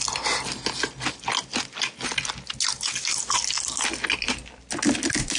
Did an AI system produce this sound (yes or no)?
no